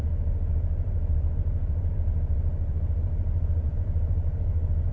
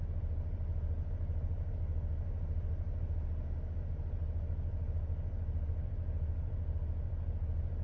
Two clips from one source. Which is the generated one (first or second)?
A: first